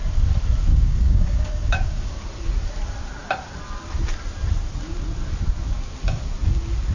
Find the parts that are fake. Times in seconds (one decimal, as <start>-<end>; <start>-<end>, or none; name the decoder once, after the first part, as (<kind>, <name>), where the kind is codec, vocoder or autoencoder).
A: 0.7-2.2 (codec, DAC)